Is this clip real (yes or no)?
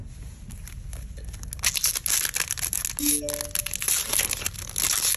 yes